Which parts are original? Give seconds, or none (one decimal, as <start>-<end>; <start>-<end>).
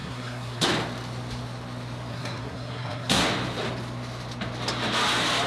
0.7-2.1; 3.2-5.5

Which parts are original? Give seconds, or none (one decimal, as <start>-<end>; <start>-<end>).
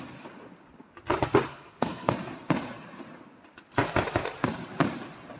0.0-1.5; 2.1-5.4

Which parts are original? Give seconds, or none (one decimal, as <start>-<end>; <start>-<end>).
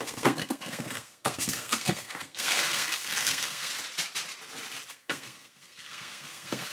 3.7-4.9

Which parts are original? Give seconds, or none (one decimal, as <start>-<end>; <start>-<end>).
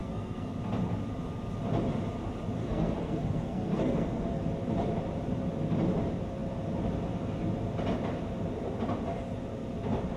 0.5-2.6; 4.4-10.2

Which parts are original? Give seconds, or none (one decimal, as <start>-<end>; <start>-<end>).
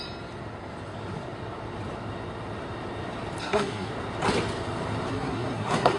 0.0-3.4; 3.9-5.1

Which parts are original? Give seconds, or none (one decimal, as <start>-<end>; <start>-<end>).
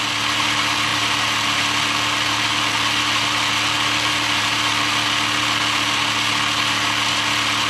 0.0-7.7